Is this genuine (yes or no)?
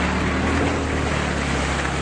yes